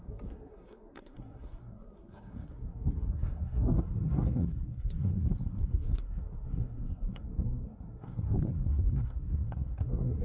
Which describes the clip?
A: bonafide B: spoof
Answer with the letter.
B